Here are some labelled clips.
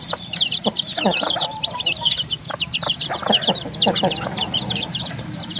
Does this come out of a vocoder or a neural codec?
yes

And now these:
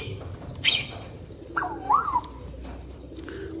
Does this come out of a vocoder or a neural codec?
yes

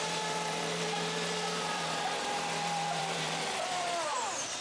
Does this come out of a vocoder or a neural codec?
yes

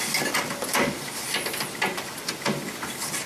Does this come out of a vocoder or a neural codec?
no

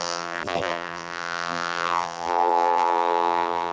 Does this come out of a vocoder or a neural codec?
yes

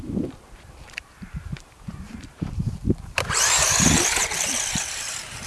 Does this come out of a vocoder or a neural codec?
yes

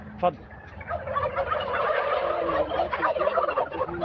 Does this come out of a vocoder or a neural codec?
no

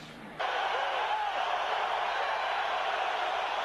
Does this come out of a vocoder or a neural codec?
no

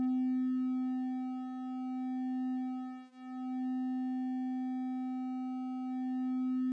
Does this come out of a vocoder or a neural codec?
no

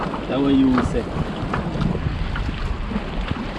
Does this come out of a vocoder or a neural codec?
no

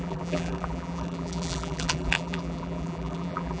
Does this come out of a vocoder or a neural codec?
yes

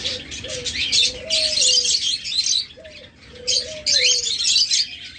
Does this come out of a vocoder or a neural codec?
no